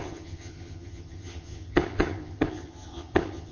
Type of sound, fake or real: fake